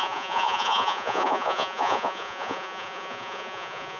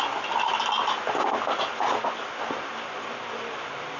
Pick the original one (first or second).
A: second